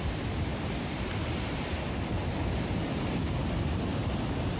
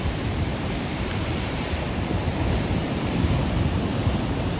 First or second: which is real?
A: first